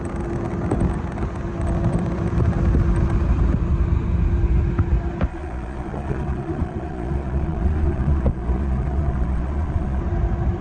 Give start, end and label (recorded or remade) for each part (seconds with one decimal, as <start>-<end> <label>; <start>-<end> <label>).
0.0-5.3 recorded; 5.3-10.0 remade; 10.0-10.6 recorded